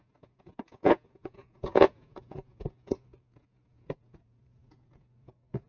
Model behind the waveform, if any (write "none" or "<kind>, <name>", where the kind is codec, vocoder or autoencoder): vocoder, Vocos